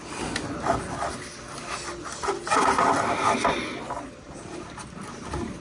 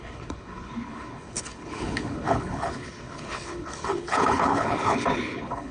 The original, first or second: first